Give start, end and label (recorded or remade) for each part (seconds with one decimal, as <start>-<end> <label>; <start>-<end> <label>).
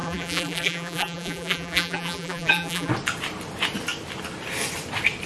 0.0-2.9 remade; 2.9-5.3 recorded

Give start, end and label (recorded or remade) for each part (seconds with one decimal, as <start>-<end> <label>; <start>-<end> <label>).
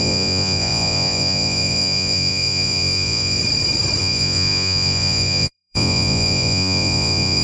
0.0-3.4 remade; 3.4-4.0 recorded; 4.0-7.4 remade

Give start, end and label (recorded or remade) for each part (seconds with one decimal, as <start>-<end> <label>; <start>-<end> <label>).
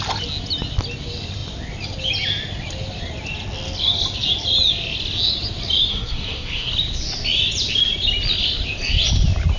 0.0-5.9 recorded; 5.9-6.7 remade; 6.7-9.6 recorded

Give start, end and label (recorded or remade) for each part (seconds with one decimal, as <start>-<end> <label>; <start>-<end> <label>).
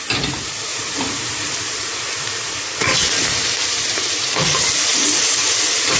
0.0-0.7 recorded; 0.7-4.3 remade; 4.3-6.0 recorded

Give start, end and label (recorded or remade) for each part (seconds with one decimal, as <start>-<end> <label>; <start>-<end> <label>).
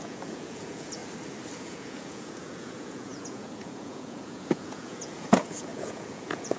0.0-1.0 remade; 1.0-1.6 recorded; 1.6-6.6 remade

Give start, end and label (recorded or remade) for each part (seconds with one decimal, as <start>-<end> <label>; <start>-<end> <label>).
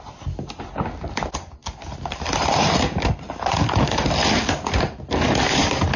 0.0-6.0 recorded